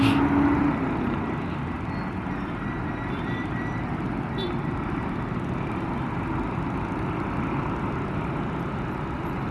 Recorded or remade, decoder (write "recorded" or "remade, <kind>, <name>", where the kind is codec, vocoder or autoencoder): recorded